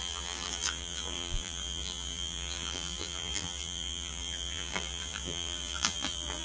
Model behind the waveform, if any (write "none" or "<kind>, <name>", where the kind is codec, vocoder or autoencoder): vocoder, BigVGAN v2